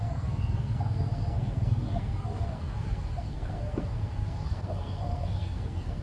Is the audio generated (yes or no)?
yes